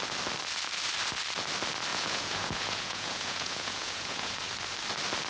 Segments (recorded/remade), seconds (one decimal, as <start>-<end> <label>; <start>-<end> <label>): 0.0-1.9 recorded; 1.9-4.3 remade; 4.3-5.3 recorded